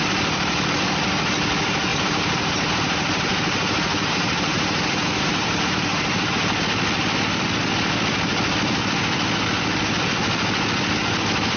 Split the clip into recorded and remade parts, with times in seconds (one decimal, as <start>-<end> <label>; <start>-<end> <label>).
0.0-1.9 recorded; 1.9-6.3 remade; 6.3-11.6 recorded